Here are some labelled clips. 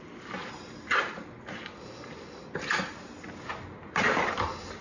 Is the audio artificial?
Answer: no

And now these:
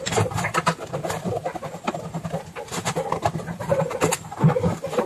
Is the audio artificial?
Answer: yes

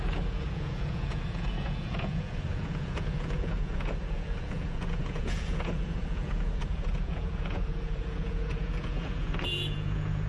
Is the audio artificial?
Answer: yes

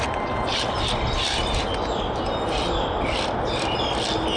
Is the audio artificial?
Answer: no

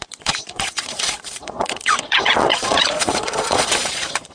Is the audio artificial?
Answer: yes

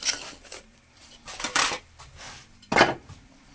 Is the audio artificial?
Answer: yes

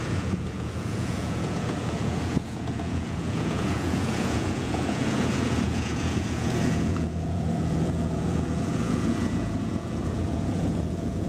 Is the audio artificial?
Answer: yes